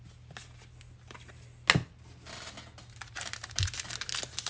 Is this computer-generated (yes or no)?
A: no